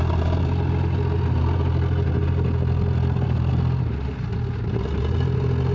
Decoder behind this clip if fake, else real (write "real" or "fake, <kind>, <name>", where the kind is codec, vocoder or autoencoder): real